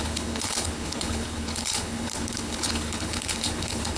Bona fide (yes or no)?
no